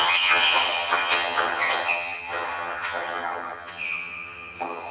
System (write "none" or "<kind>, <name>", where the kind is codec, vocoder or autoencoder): vocoder, HiFi-GAN